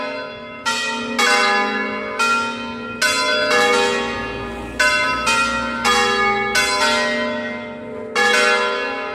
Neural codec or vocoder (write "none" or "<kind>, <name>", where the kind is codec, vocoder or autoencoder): none